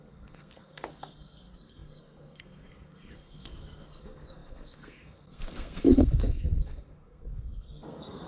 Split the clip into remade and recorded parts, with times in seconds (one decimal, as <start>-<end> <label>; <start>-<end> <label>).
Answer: 0.0-8.3 remade

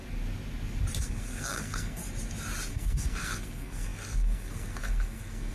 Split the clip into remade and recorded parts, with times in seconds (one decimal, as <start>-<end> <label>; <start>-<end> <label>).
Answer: 0.0-1.0 recorded; 1.0-2.0 remade; 2.0-2.7 recorded; 2.7-5.5 remade

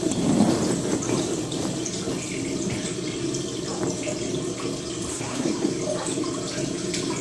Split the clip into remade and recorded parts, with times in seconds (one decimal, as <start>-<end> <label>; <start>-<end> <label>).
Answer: 0.0-5.1 recorded; 5.1-5.7 remade; 5.7-7.2 recorded

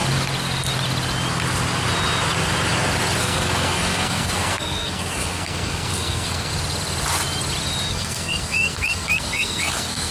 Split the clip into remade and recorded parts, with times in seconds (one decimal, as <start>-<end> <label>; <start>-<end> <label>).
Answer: 0.0-3.2 recorded; 3.2-6.5 remade; 6.5-7.9 recorded; 7.9-10.1 remade